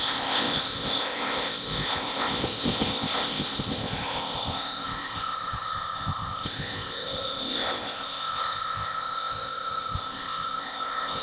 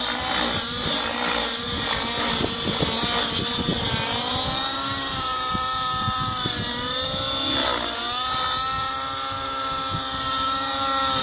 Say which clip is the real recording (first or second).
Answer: second